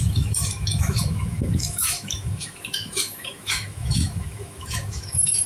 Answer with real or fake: fake